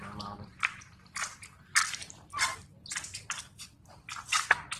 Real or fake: real